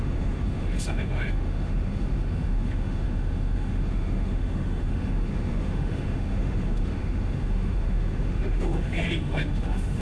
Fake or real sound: fake